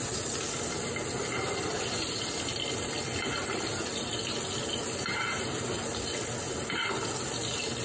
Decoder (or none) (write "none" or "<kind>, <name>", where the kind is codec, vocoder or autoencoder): none